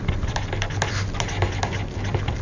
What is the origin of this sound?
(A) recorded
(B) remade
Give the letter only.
A